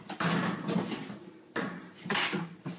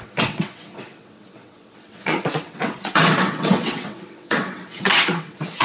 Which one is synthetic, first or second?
second